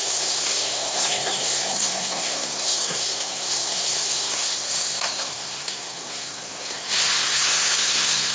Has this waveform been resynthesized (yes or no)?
yes